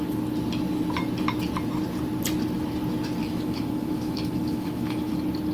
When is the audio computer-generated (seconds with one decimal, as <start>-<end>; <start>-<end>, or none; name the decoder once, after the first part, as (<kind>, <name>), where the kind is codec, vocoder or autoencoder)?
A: 3.2-5.1 (autoencoder, DAC-VAE)